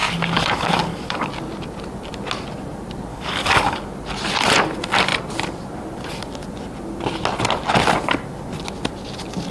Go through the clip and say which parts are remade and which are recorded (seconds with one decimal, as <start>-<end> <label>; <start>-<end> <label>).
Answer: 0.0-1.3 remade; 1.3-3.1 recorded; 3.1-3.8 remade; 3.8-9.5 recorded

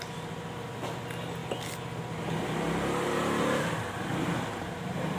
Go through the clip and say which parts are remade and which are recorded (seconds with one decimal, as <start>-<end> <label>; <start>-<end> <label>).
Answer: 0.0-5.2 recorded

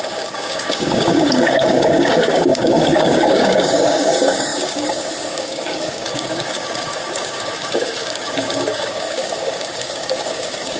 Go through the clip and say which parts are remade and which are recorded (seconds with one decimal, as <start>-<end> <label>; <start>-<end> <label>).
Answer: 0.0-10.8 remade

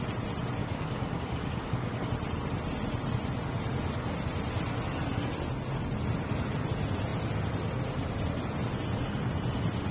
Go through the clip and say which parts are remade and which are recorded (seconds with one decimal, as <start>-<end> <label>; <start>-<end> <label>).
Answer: 0.0-0.6 recorded; 0.6-2.1 remade; 2.1-9.9 recorded

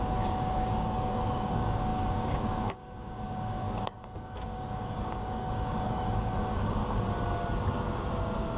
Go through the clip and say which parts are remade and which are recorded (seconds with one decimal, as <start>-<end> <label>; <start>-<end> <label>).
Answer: 0.0-6.8 remade; 6.8-7.7 recorded; 7.7-8.6 remade